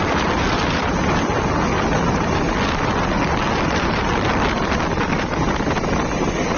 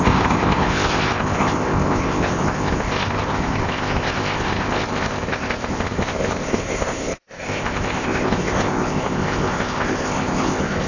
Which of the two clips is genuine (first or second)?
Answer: first